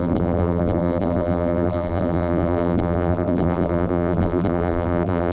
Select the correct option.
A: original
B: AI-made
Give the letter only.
B